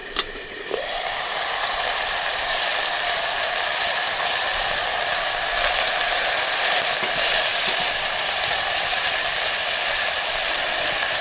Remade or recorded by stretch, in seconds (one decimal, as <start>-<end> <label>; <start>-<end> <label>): 0.0-7.5 remade; 7.5-8.2 recorded; 8.2-11.2 remade